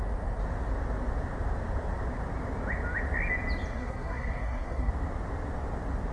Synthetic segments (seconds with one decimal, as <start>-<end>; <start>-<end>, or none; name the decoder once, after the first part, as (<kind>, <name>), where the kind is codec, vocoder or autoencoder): 3.7-4.9 (codec, SNAC)